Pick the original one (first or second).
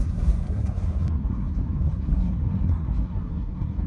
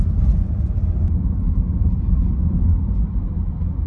second